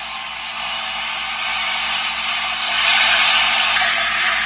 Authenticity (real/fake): real